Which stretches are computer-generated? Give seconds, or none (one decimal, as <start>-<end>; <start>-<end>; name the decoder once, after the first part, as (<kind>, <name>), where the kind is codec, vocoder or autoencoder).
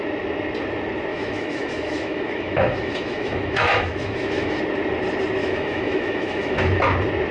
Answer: 1.1-4.6 (autoencoder, DAC-VAE); 5.4-6.8